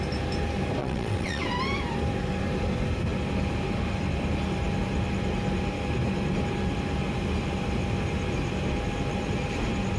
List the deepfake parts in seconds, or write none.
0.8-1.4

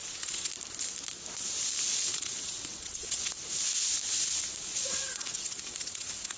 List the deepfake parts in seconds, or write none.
0.0-0.5; 1.9-3.4; 4.7-6.4

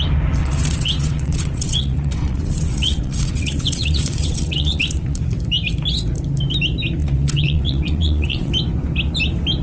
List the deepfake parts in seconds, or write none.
0.4-5.2; 7.0-8.5

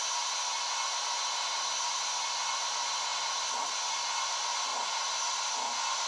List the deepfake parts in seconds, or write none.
none

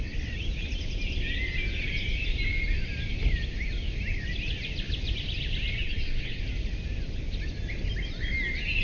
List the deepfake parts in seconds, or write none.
5.8-6.4

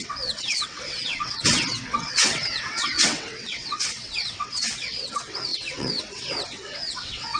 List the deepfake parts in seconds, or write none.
0.0-7.4

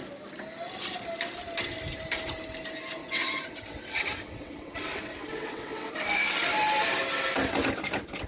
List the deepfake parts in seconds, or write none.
3.0-5.9